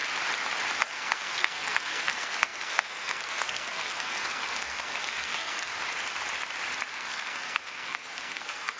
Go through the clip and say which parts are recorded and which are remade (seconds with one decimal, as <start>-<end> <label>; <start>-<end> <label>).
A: 0.0-0.8 recorded; 0.8-5.7 remade; 5.7-6.9 recorded; 6.9-8.8 remade